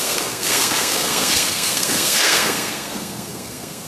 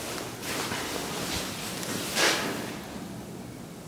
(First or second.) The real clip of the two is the second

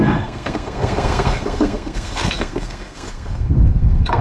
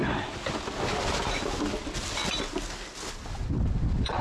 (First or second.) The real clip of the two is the second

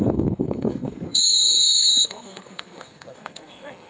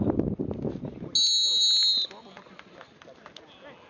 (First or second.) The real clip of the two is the second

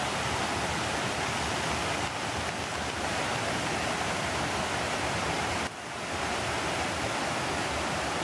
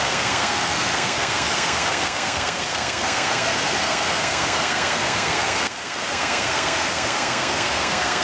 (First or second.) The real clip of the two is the first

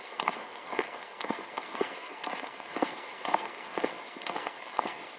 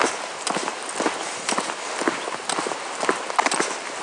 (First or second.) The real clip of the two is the second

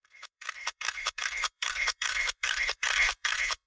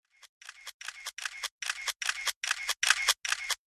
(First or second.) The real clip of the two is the second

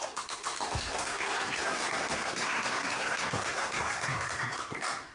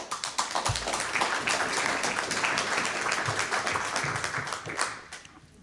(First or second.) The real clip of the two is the second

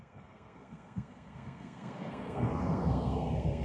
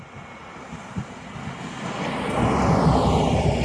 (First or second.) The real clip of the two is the second